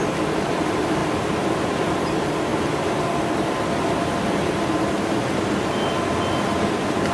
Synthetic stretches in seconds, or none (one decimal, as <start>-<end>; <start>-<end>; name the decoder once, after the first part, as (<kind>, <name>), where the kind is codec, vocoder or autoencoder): none